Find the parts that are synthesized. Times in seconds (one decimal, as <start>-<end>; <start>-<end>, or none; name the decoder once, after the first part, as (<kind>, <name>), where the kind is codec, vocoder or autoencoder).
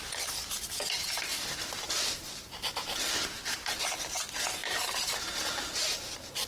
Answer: 0.0-6.5 (vocoder, BigVGAN v2)